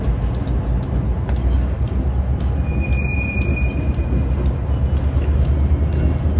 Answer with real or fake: real